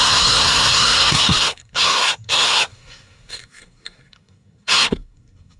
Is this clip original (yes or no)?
no